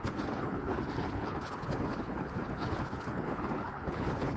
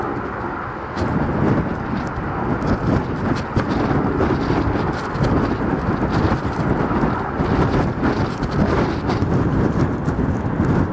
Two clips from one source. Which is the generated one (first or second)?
first